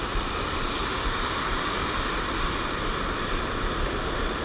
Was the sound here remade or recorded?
recorded